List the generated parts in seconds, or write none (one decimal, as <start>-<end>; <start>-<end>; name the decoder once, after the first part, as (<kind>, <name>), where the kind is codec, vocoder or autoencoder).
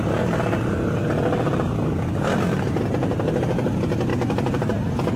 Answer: none